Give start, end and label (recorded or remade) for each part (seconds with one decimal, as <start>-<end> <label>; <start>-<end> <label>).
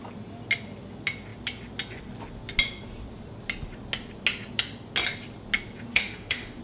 0.0-5.9 recorded; 5.9-6.6 remade